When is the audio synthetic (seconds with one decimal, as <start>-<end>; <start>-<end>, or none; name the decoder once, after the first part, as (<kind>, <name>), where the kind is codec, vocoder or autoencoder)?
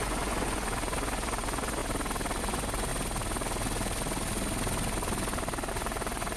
0.0-1.8 (vocoder, Vocos); 2.4-2.9; 5.7-6.4